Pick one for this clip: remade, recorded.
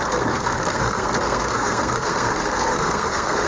remade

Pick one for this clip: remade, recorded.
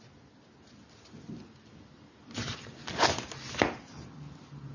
recorded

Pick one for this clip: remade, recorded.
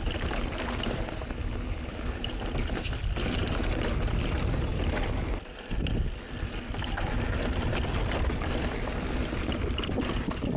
recorded